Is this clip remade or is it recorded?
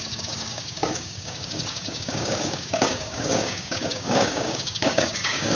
remade